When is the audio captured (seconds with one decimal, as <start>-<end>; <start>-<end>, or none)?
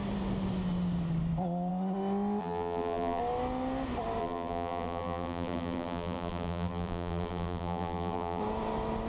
0.0-2.4; 3.2-4.2; 8.4-9.1